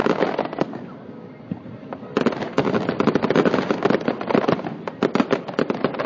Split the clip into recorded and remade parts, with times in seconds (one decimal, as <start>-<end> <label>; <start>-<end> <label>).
0.0-2.5 recorded; 2.5-4.7 remade; 4.7-6.1 recorded